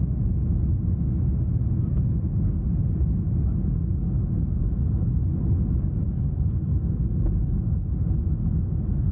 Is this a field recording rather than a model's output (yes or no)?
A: yes